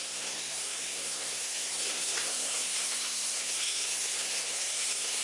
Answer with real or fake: fake